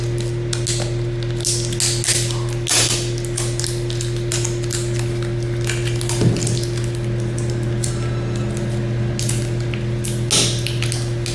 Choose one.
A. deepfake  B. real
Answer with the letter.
B